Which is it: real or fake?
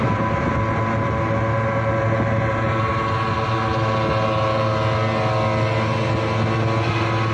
real